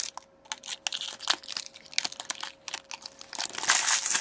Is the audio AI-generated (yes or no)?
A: no